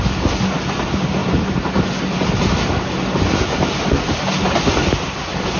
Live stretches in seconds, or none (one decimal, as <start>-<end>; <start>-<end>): 0.0-5.6